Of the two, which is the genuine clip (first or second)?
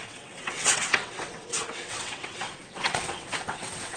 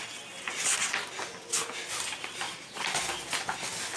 second